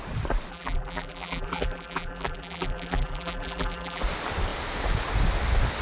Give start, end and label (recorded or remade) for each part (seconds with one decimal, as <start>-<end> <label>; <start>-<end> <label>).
0.0-0.5 recorded; 0.5-4.0 remade; 4.0-5.8 recorded